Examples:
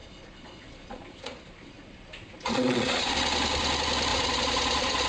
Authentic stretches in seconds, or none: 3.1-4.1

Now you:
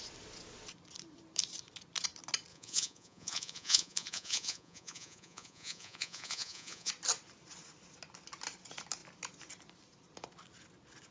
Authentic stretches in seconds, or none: 0.0-2.5; 6.9-11.1

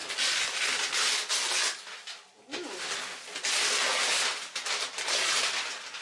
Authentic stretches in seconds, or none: 0.0-6.0